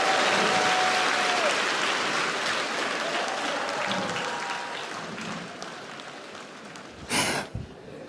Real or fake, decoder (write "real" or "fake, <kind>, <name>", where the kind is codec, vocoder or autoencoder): real